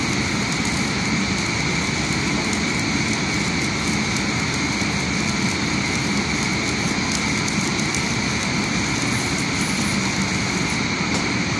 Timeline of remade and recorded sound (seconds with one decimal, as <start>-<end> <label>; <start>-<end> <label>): 0.0-7.7 recorded; 7.7-11.6 remade